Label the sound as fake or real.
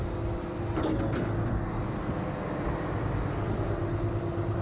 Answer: real